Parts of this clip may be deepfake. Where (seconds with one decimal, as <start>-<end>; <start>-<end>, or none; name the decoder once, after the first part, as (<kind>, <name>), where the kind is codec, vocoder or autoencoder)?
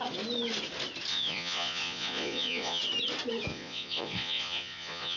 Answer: 1.1-2.8 (vocoder, Vocos); 3.5-5.2